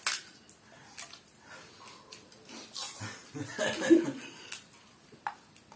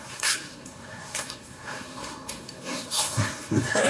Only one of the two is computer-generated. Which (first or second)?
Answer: second